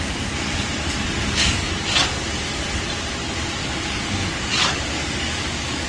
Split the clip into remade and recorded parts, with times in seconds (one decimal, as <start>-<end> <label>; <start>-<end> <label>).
0.0-1.2 recorded; 1.2-1.7 remade; 1.7-3.6 recorded; 3.6-5.9 remade